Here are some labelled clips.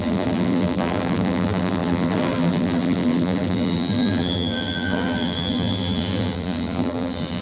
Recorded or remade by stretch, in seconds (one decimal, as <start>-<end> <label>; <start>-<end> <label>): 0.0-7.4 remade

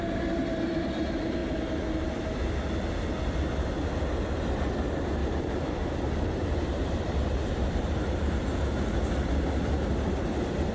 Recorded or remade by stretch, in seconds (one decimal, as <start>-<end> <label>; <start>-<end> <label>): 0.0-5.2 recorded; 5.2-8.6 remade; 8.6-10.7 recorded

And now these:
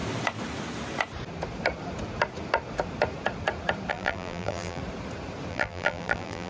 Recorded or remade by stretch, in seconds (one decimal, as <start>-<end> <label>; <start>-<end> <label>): 0.0-3.9 recorded; 3.9-4.8 remade; 4.8-5.5 recorded; 5.5-6.5 remade

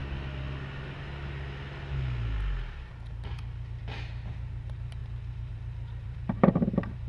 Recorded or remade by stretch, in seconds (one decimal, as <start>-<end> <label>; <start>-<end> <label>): 0.0-4.3 recorded; 4.3-5.0 remade; 5.0-5.5 recorded; 5.5-7.1 remade

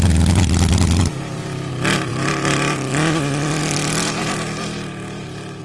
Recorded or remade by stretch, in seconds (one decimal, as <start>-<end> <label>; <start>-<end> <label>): 0.0-1.1 recorded; 1.1-1.7 remade; 1.7-2.1 recorded; 2.1-2.9 remade; 2.9-3.6 recorded; 3.6-5.6 remade